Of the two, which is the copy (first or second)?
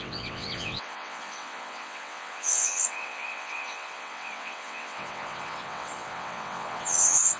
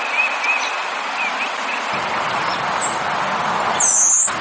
first